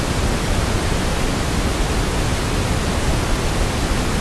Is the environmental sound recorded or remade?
recorded